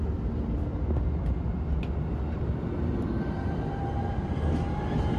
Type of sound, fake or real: real